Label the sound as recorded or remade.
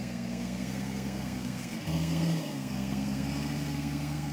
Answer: remade